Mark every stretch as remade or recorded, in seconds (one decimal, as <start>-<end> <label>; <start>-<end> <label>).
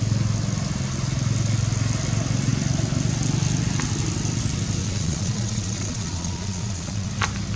0.0-4.8 recorded; 4.8-7.1 remade; 7.1-7.6 recorded